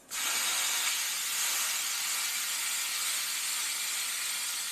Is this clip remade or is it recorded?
recorded